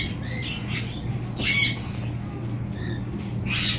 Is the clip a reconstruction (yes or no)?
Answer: no